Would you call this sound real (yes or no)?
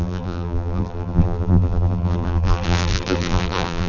no